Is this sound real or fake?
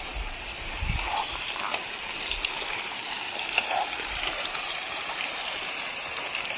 fake